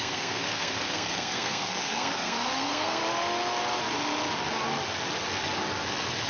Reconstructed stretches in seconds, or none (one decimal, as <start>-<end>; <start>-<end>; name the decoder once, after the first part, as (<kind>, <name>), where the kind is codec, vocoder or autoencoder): 0.0-3.0 (codec, SNAC)